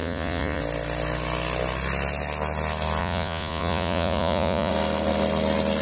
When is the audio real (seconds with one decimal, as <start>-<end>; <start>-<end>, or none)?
0.6-3.0; 4.7-5.8